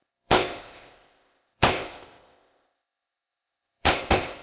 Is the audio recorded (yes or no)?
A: no